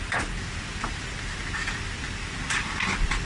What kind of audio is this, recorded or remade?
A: recorded